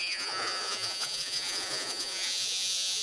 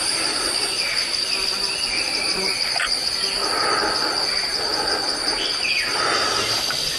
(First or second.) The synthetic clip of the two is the first